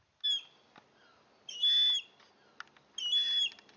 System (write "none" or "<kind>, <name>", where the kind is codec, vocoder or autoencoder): none